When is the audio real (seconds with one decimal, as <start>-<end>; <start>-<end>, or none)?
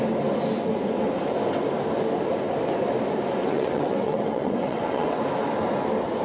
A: 0.0-3.4; 5.2-6.2